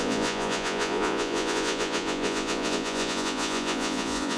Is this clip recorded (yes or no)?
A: no